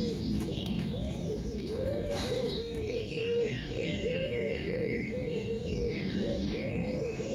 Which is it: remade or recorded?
remade